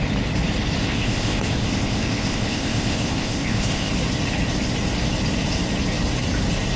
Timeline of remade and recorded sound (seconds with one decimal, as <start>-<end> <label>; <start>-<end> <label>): 0.0-0.8 recorded; 0.8-3.9 remade; 3.9-6.8 recorded